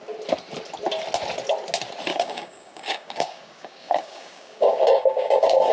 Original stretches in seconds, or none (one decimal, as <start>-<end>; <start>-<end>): 0.0-2.1